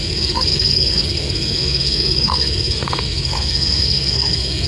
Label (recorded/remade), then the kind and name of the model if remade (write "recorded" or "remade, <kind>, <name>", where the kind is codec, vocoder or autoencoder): remade, codec, SNAC